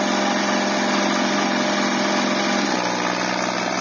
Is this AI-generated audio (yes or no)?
no